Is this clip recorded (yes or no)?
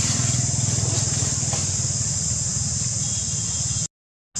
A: yes